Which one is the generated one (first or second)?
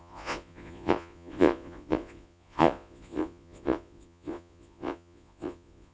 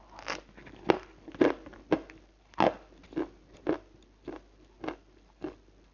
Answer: first